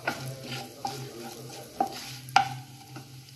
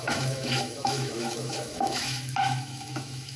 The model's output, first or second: second